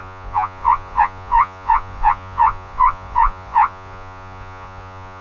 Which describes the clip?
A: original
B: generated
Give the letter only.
B